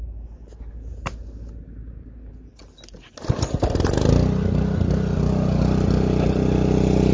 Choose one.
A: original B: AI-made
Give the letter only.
A